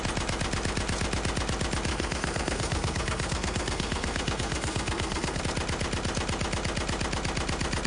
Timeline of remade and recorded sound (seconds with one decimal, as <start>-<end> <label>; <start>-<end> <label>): 0.0-1.9 recorded; 1.9-5.4 remade; 5.4-7.9 recorded